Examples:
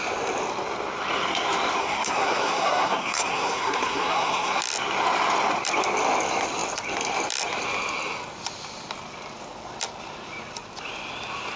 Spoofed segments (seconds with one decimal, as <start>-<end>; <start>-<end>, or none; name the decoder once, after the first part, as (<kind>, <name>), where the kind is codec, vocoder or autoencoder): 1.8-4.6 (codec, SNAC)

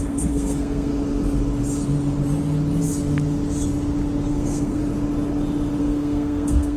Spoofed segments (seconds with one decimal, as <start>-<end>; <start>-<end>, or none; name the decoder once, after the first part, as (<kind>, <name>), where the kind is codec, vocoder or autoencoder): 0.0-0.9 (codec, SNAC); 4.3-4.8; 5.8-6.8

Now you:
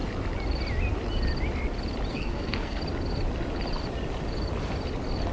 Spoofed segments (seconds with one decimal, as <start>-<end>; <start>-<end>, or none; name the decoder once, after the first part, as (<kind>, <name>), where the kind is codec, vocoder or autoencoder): 2.1-2.8 (codec, SNAC)

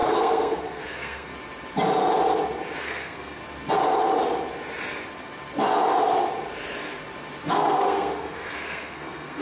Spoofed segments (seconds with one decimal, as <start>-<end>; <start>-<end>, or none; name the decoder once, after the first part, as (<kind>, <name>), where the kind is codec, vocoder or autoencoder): 0.0-1.3 (codec, SNAC); 2.8-3.4; 7.4-9.4

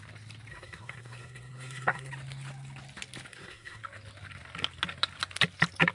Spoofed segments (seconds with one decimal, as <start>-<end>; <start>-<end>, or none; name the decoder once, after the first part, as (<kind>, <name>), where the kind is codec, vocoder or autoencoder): 0.5-2.1 (codec, SNAC); 3.3-3.8